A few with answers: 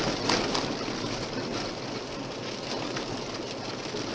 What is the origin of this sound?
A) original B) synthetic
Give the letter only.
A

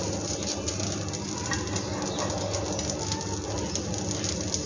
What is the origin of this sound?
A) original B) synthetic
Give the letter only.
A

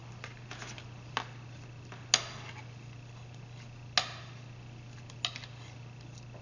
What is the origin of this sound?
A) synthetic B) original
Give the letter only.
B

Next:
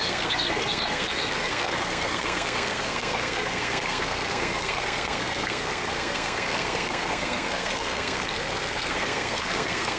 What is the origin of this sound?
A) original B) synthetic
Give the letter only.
B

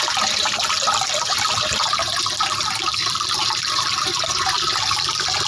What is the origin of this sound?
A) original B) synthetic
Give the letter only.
A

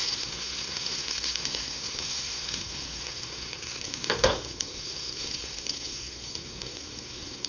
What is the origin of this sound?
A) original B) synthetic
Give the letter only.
B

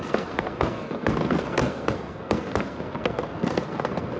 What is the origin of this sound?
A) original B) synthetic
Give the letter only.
B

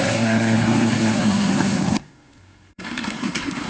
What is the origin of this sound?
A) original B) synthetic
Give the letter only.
B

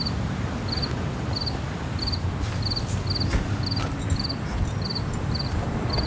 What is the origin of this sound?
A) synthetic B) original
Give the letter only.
B